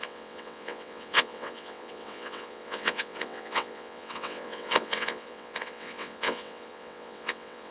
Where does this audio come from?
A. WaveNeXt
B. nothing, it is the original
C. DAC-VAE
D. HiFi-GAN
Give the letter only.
A